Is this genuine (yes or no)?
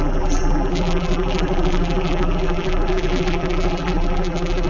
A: no